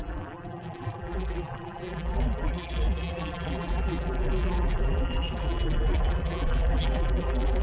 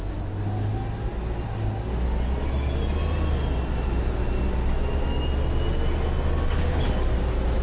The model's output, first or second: first